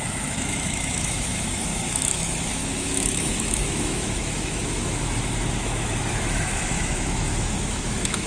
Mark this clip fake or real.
fake